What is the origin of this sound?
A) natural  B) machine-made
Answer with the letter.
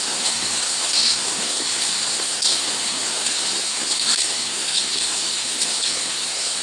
B